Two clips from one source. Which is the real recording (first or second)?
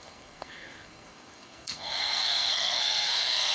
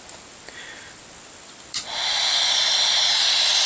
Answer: second